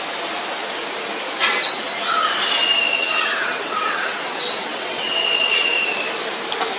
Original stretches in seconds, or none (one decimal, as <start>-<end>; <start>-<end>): 0.0-3.0; 5.9-6.8